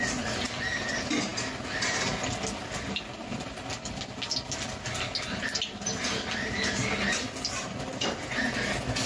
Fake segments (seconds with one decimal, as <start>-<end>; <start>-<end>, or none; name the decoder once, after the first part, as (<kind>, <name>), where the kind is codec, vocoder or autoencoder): none